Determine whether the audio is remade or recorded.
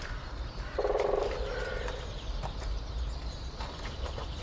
remade